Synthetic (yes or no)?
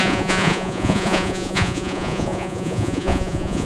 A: yes